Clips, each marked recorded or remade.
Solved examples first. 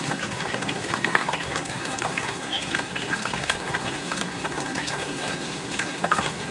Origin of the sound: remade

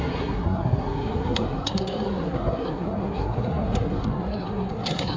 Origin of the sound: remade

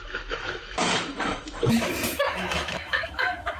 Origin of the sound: remade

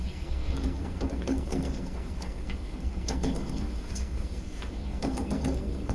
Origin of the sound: remade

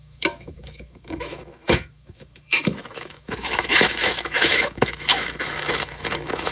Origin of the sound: remade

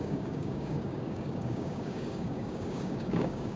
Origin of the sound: remade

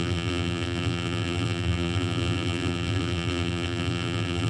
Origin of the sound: remade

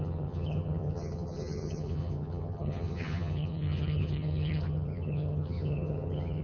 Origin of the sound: remade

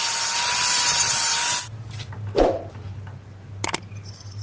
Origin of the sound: recorded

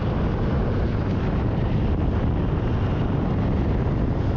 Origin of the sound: recorded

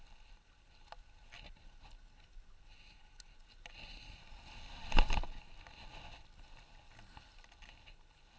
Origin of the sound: recorded